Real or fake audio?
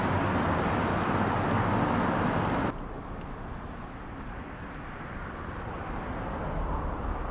real